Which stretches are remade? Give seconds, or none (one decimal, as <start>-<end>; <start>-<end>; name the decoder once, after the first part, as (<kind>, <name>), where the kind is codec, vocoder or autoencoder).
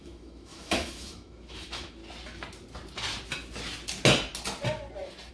0.0-2.0 (autoencoder, DAC-VAE)